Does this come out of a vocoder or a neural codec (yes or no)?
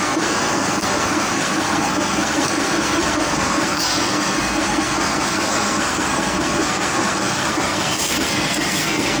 yes